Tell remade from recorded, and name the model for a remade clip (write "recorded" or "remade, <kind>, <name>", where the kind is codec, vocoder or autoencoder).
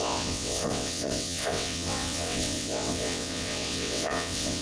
remade, vocoder, WaveNeXt